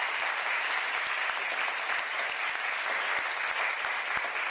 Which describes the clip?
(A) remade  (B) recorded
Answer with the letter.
B